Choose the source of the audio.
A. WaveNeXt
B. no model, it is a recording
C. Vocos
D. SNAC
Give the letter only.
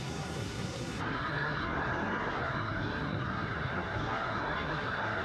D